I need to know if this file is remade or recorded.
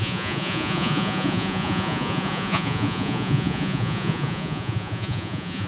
remade